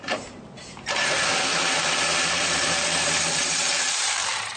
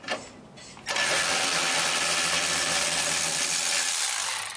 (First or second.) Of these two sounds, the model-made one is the first